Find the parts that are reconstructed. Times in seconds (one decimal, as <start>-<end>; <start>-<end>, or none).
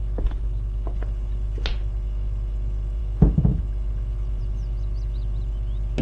none